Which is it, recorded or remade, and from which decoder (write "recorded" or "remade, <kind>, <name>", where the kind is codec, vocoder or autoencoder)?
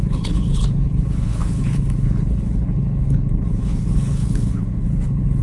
remade, codec, HILCodec